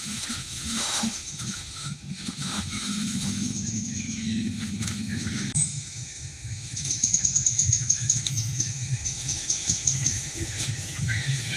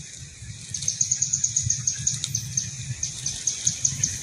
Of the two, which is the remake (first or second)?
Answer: first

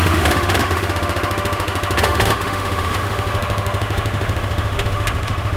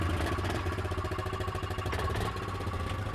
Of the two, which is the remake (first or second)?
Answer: first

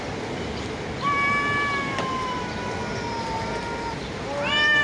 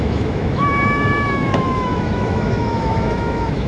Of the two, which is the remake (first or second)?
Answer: second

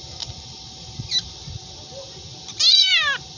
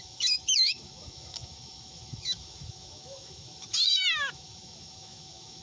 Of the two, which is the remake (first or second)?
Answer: second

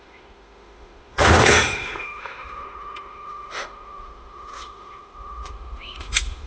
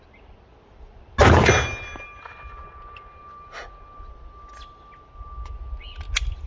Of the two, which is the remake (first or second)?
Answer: first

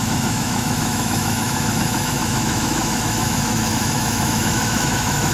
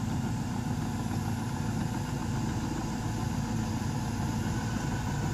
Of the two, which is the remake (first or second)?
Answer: first